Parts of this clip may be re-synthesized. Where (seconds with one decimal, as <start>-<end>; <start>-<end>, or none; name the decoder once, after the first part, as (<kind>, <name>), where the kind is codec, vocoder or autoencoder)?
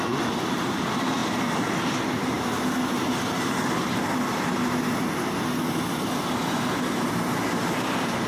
none